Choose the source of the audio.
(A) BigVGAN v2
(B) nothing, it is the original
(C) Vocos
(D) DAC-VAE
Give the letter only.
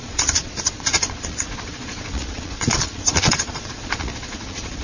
C